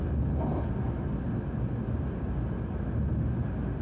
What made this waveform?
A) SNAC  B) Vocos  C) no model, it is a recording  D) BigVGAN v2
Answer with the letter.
C